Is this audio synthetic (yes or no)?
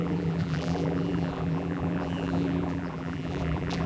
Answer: yes